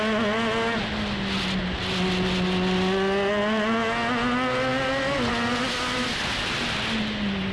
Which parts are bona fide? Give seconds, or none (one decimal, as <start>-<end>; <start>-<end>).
0.0-7.5